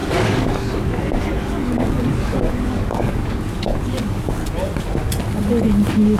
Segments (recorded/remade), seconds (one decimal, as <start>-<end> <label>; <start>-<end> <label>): 0.0-4.4 remade; 4.4-6.2 recorded